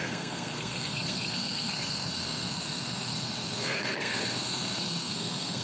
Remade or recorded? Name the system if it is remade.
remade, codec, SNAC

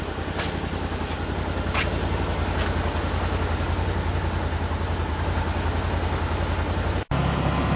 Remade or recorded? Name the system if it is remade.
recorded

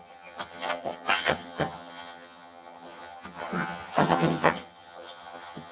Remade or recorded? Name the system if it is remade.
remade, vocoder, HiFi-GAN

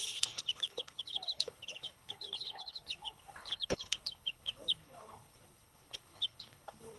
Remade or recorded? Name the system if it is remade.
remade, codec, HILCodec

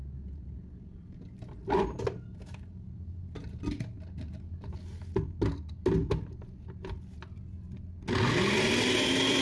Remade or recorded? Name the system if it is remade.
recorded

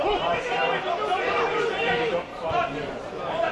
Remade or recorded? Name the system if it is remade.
remade, vocoder, BigVGAN v2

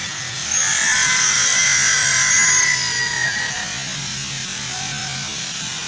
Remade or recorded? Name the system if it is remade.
recorded